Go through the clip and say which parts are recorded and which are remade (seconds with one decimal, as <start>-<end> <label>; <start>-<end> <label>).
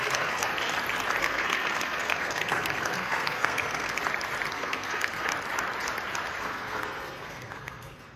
0.0-0.5 remade; 0.5-1.2 recorded; 1.2-4.0 remade; 4.0-4.5 recorded; 4.5-5.3 remade; 5.3-6.4 recorded; 6.4-8.2 remade